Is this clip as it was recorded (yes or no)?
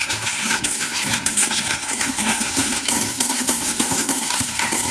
no